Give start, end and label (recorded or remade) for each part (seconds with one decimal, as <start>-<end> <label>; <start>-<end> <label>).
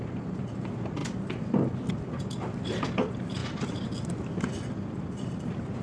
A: 0.0-5.8 recorded